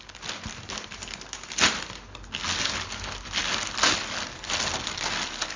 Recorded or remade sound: recorded